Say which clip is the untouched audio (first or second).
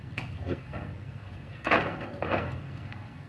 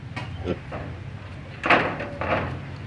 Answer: second